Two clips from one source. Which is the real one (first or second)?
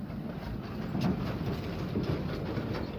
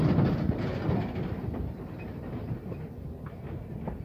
second